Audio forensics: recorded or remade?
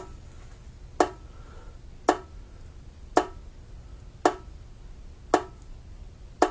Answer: recorded